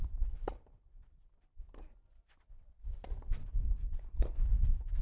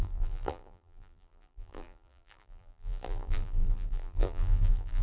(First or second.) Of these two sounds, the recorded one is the first